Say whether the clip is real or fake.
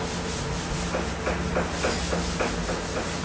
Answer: real